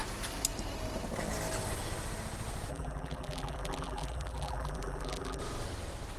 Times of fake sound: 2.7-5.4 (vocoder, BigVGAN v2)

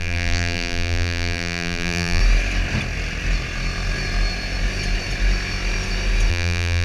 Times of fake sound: 0.0-2.2 (vocoder, BigVGAN v2); 6.3-6.8

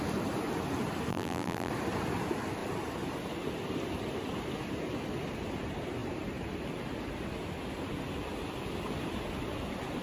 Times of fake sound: 1.1-1.7 (vocoder, BigVGAN v2)

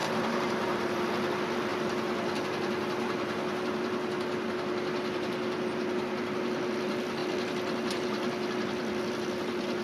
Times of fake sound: 0.0-1.0 (vocoder, BigVGAN v2)

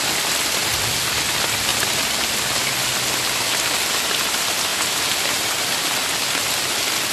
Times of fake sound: 4.7-5.6 (vocoder, BigVGAN v2)

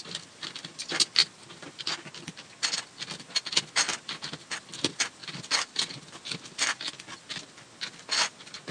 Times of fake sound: 5.2-6.2 (vocoder, BigVGAN v2)